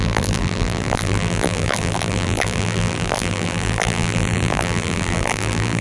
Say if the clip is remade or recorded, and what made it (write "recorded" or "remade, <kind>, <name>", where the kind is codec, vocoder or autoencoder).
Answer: remade, vocoder, BigVGAN v2